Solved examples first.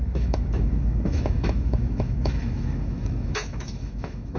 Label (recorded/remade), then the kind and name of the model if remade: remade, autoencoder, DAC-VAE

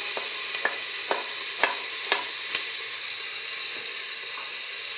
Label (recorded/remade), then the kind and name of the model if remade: recorded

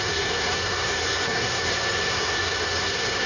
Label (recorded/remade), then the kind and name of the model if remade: remade, codec, SNAC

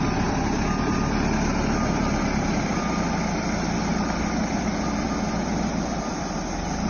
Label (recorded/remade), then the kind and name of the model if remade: recorded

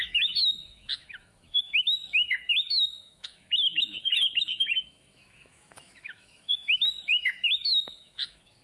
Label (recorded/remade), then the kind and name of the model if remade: remade, autoencoder, DAC-VAE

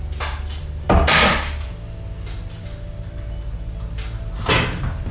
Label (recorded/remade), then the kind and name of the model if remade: recorded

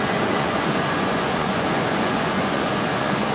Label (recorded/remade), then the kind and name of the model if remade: remade, vocoder, Vocos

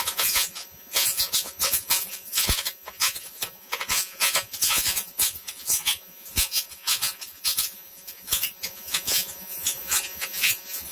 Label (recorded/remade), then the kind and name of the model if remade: remade, vocoder, Vocos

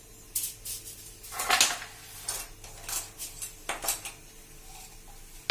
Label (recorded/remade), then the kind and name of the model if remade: recorded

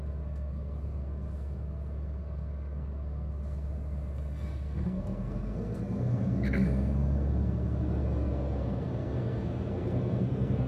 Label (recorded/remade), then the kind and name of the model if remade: remade, codec, SNAC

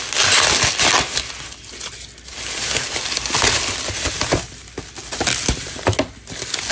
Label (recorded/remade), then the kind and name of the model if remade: recorded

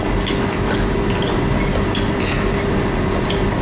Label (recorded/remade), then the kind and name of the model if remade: recorded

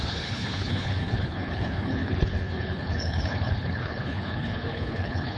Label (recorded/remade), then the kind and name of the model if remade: remade, codec, HILCodec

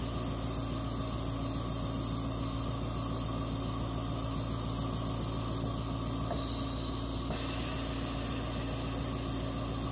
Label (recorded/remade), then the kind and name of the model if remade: recorded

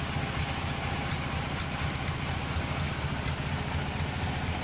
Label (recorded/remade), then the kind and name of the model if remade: recorded